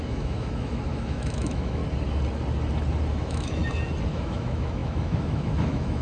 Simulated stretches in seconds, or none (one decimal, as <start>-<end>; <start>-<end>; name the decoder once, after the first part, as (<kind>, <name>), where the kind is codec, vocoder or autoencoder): 0.0-1.8 (autoencoder, DAC-VAE); 3.1-3.6; 4.1-6.0